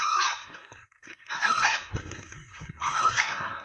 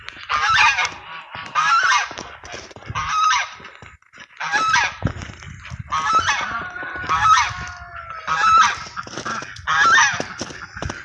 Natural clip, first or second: second